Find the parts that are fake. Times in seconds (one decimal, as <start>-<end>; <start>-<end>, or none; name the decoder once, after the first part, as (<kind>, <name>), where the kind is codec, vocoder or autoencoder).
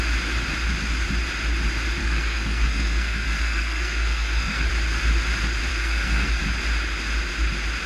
2.0-4.7 (codec, SNAC); 5.7-6.4